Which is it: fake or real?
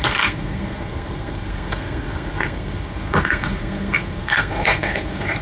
fake